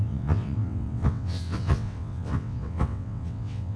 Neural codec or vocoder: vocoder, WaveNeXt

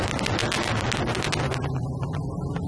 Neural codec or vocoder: none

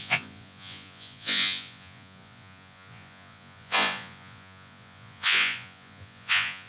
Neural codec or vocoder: vocoder, Vocos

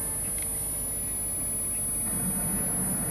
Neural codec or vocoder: none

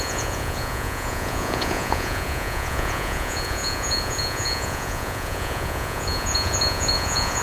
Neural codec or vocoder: vocoder, Vocos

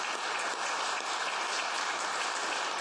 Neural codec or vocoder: none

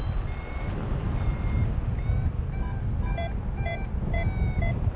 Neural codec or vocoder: none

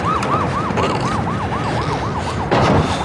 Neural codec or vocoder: vocoder, BigVGAN v2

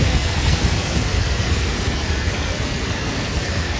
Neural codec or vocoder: codec, SNAC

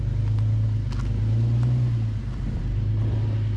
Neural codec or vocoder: none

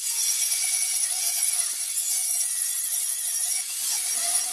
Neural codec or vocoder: vocoder, Vocos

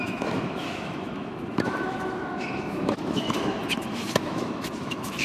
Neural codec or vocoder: autoencoder, DAC-VAE